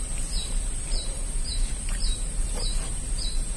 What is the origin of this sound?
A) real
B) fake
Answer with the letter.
B